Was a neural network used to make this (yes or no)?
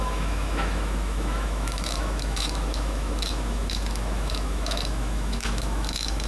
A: yes